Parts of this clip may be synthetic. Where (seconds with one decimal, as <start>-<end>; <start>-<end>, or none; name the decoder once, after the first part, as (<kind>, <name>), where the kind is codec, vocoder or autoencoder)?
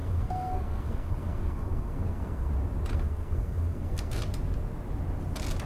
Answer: 0.0-2.5 (codec, SNAC); 2.9-4.2